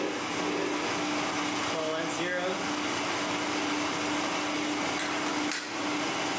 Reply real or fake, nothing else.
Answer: real